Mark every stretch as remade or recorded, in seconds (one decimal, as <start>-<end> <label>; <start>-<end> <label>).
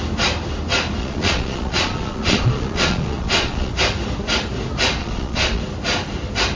0.0-1.0 recorded; 1.0-3.7 remade; 3.7-5.0 recorded; 5.0-5.6 remade; 5.6-6.6 recorded